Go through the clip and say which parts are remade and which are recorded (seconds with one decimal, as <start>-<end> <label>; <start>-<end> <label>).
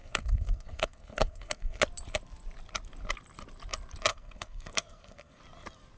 0.0-1.8 remade; 1.8-4.1 recorded; 4.1-5.4 remade; 5.4-6.0 recorded